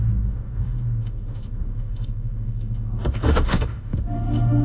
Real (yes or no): no